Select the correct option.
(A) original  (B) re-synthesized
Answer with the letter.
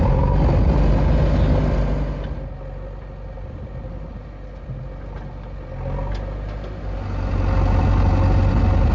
A